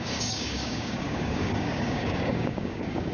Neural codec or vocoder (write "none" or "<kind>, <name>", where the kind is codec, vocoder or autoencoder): codec, DAC